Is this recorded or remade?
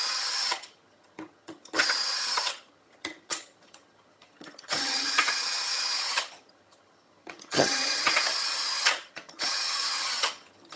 remade